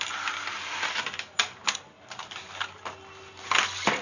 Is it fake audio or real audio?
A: real